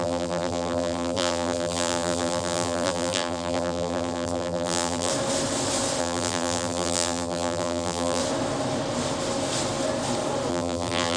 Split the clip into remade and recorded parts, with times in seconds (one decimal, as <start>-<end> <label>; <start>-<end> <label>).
0.0-5.1 remade; 5.1-6.0 recorded; 6.0-8.2 remade; 8.2-10.5 recorded; 10.5-11.2 remade